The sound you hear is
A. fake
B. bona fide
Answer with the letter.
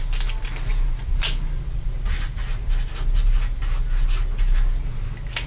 B